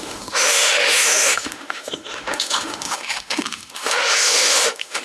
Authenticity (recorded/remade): remade